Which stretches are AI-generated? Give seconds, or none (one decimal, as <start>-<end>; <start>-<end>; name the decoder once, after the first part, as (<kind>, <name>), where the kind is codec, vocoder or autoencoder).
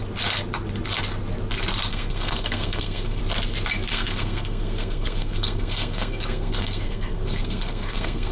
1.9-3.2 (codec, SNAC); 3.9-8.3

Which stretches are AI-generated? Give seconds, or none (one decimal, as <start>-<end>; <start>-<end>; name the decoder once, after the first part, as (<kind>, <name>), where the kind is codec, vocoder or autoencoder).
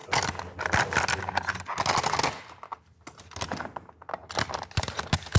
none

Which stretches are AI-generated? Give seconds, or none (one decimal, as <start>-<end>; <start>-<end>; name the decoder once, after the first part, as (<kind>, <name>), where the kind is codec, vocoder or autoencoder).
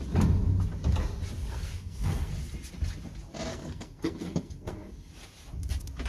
1.4-2.3 (codec, SNAC); 3.5-5.1